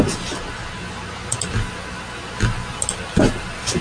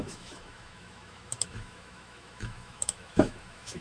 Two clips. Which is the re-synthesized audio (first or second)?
second